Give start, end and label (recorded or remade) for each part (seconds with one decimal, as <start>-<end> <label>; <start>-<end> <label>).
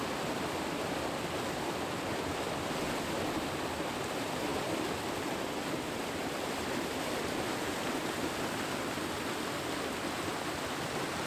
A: 0.0-11.3 recorded